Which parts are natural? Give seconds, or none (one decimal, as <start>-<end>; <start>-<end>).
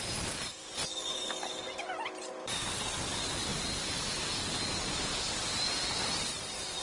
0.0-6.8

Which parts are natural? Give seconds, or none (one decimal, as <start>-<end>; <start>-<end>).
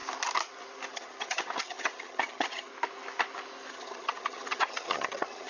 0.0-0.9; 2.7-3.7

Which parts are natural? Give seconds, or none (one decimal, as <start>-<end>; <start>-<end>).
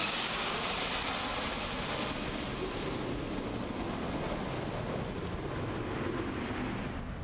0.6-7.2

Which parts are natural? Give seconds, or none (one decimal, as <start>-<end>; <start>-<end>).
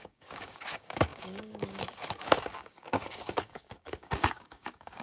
none